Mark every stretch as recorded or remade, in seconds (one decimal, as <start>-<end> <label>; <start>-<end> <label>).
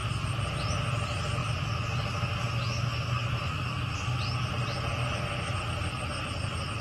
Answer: 0.0-6.8 recorded